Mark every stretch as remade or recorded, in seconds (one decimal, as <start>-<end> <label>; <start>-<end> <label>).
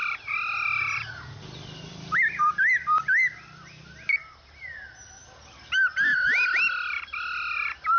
0.0-8.0 recorded